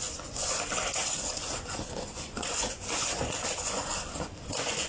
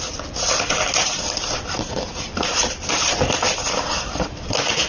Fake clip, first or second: first